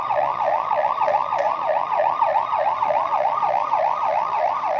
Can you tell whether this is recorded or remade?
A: remade